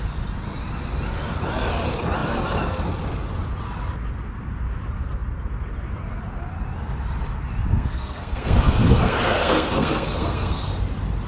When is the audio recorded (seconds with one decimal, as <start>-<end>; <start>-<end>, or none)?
0.0-7.7; 10.7-11.3